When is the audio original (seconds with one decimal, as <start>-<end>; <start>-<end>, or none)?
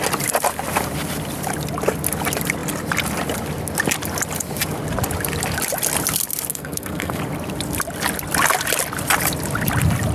0.0-6.5; 7.2-10.1